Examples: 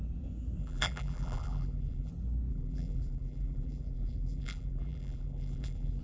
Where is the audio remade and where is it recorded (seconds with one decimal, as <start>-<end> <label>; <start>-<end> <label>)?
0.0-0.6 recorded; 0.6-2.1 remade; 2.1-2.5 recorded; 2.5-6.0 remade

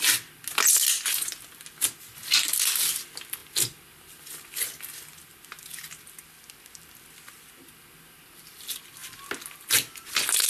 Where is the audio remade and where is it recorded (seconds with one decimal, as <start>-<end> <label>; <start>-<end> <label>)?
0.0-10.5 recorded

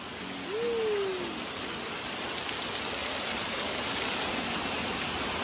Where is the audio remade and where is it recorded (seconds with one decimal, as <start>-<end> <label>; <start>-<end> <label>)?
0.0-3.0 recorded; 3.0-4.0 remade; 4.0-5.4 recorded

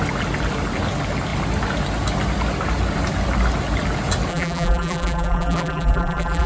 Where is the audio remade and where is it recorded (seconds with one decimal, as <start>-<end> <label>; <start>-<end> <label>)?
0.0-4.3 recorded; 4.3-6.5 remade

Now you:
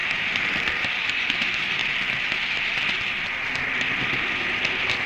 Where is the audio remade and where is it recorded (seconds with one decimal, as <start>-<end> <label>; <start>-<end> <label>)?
0.0-0.8 recorded; 0.8-1.8 remade; 1.8-5.1 recorded

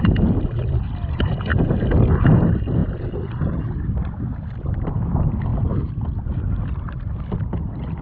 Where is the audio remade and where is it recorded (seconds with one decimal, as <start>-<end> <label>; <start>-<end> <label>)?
0.0-1.5 recorded; 1.5-2.1 remade; 2.1-2.8 recorded; 2.8-4.0 remade; 4.0-8.0 recorded

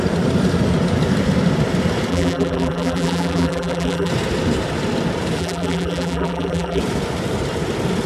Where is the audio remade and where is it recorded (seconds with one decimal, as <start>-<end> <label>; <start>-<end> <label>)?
0.0-2.1 recorded; 2.1-4.1 remade; 4.1-5.4 recorded; 5.4-6.8 remade; 6.8-8.1 recorded

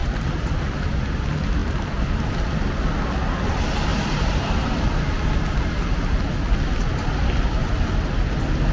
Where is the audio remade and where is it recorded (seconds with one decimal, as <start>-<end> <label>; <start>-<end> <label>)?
0.0-1.0 remade; 1.0-1.6 recorded; 1.6-2.3 remade; 2.3-3.9 recorded; 3.9-5.0 remade; 5.0-8.7 recorded